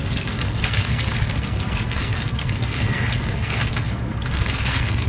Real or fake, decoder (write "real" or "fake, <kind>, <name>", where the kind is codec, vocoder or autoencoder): fake, codec, SNAC